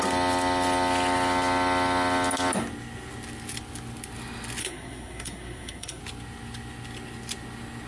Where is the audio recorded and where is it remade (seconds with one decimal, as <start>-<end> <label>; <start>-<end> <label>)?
0.0-4.6 recorded; 4.6-6.0 remade; 6.0-7.9 recorded